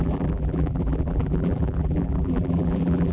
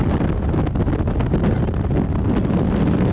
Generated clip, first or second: first